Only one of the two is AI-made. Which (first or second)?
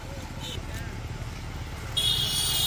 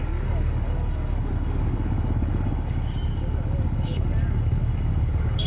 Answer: second